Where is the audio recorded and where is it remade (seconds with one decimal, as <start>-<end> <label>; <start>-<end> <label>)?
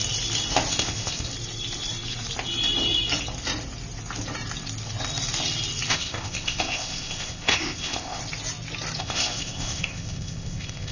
0.0-0.7 recorded; 0.7-1.3 remade; 1.3-5.9 recorded; 5.9-8.2 remade; 8.2-9.0 recorded; 9.0-10.9 remade